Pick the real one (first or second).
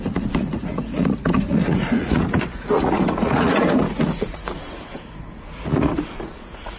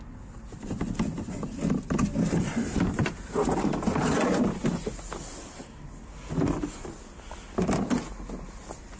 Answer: second